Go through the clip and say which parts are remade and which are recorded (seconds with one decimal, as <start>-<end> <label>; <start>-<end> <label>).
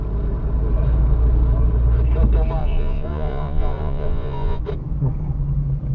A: 0.0-2.6 recorded; 2.6-4.6 remade; 4.6-5.9 recorded